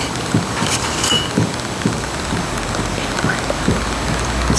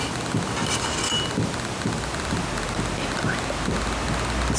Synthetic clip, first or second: first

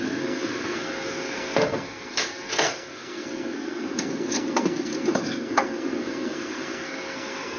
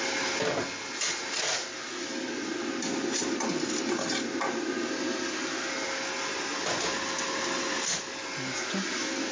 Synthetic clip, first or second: first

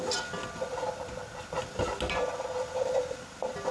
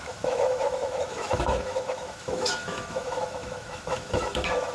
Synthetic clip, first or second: second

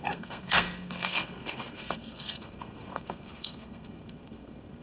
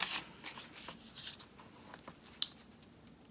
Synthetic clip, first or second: first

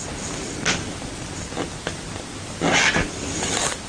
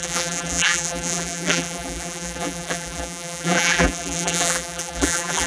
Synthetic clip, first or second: second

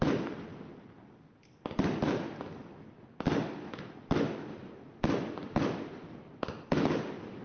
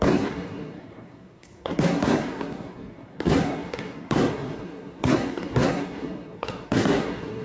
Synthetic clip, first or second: second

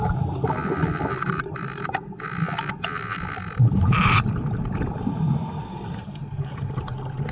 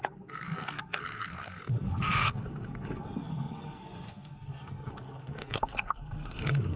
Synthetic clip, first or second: second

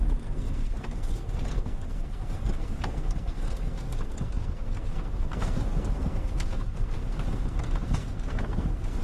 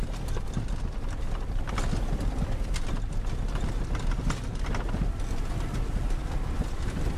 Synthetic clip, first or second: first